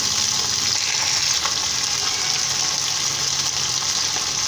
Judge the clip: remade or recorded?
recorded